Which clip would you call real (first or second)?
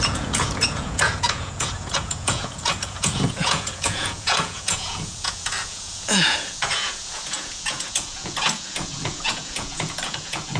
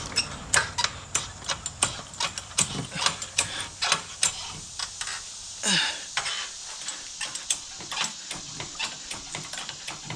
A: second